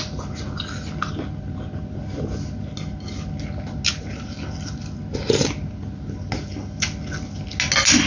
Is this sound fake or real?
real